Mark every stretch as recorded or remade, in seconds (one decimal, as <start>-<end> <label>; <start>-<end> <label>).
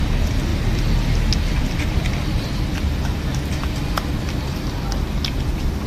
0.0-5.9 recorded